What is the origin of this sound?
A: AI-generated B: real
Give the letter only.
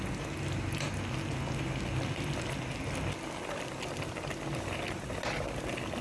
B